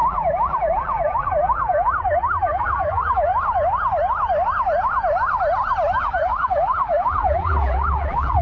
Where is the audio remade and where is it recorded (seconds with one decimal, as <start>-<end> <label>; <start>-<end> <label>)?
0.0-3.3 remade; 3.3-6.0 recorded; 6.0-8.4 remade